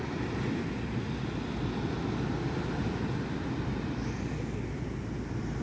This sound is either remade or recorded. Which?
recorded